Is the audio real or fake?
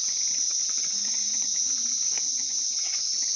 fake